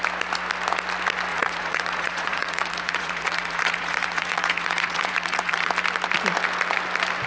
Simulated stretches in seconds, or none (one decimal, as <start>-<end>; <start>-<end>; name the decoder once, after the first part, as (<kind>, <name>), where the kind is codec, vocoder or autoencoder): 1.3-5.7 (vocoder, Vocos)